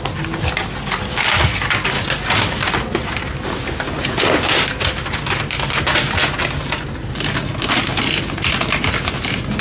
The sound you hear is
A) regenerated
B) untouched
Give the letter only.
B